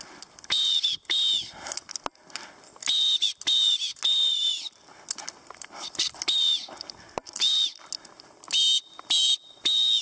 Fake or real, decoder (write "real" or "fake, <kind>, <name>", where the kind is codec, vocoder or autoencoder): real